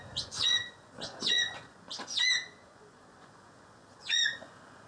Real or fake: fake